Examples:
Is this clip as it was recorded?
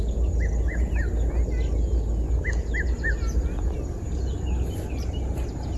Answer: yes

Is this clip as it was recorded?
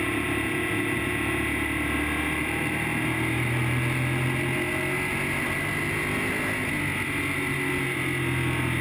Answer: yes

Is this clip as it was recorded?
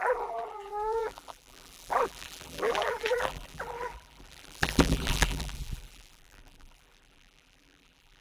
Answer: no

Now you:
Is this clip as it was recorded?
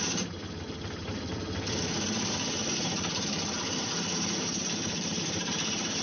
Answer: no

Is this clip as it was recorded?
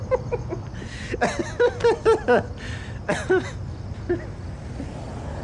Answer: yes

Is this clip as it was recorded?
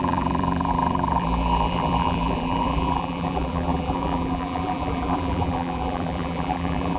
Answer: no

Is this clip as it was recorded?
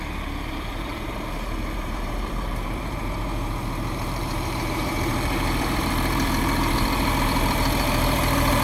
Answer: no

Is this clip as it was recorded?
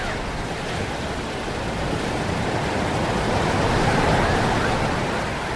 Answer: yes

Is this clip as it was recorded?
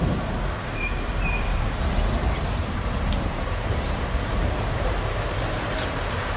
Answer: no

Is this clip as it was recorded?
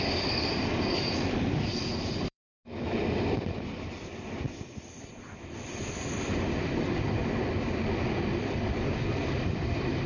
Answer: no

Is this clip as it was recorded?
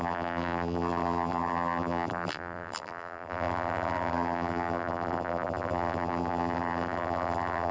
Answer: no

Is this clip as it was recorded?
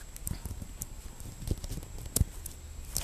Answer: no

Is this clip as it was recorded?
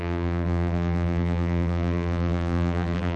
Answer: no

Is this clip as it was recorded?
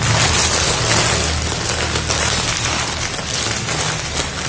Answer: yes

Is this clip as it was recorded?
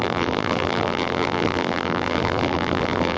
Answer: no